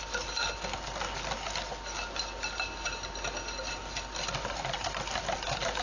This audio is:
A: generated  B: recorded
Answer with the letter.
B